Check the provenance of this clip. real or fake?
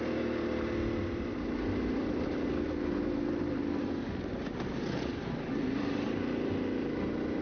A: real